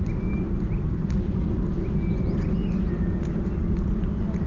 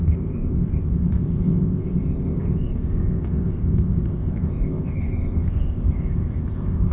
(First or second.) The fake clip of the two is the second